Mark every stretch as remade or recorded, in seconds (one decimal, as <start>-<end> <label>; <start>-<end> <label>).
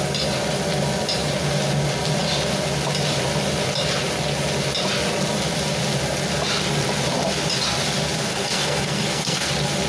0.0-8.3 recorded; 8.3-9.5 remade; 9.5-9.9 recorded